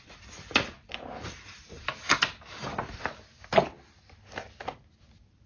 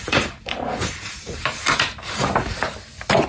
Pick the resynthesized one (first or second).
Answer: second